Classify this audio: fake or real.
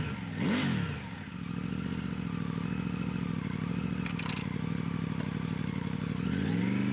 real